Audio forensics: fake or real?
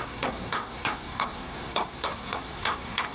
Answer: fake